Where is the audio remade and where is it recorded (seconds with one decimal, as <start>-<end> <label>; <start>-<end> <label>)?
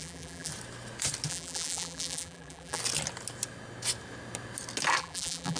0.0-0.5 remade; 0.5-1.3 recorded; 1.3-2.8 remade; 2.8-5.0 recorded; 5.0-5.6 remade